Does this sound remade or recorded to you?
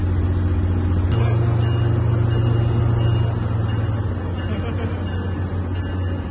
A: recorded